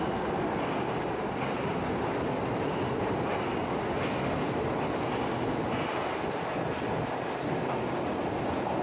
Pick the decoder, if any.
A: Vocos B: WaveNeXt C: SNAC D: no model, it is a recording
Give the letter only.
D